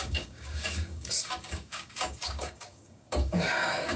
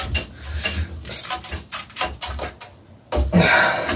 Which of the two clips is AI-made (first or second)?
first